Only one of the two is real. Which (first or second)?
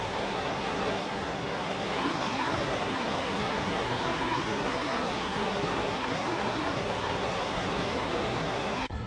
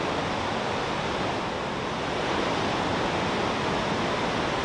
second